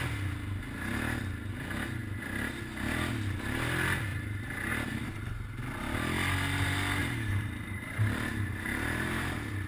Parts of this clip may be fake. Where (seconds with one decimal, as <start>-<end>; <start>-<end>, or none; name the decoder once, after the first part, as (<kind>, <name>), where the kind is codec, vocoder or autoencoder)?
4.1-4.7 (vocoder, BigVGAN v2); 7.0-9.7